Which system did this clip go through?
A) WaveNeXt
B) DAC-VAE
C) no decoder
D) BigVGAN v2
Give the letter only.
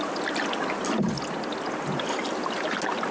C